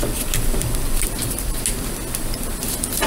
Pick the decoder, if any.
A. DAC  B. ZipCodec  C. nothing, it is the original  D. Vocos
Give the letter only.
C